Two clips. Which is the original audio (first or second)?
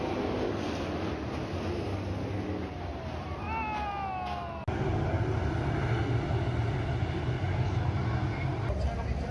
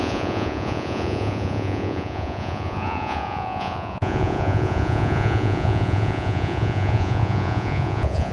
first